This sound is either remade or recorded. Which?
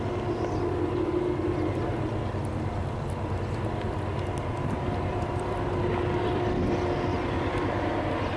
recorded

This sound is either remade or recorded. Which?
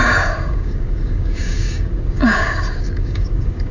remade